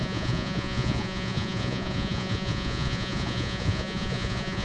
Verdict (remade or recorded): remade